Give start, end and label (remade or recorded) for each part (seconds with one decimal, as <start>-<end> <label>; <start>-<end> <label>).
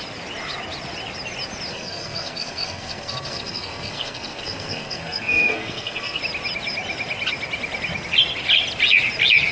0.0-1.7 recorded; 1.7-6.2 remade; 6.2-9.5 recorded